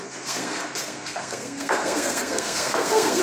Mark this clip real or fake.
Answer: fake